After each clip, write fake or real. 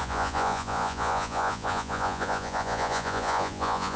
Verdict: fake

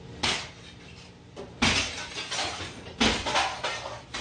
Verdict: real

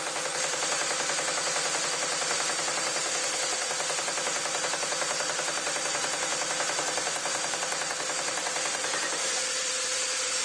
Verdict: real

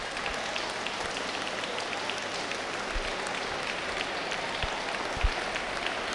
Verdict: real